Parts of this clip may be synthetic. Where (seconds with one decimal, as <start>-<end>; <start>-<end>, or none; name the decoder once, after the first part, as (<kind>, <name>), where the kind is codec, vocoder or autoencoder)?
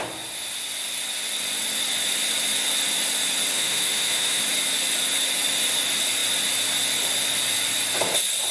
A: 3.5-4.4 (autoencoder, DAC-VAE)